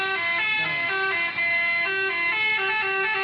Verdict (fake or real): real